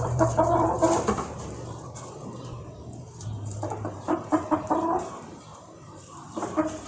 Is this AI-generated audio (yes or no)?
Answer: yes